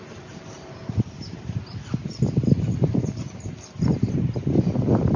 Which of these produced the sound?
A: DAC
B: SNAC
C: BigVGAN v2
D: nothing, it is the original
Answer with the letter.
D